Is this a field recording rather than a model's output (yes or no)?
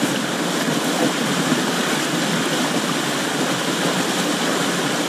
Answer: yes